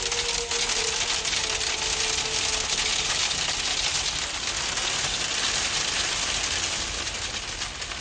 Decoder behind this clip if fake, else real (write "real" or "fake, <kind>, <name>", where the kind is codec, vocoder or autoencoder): real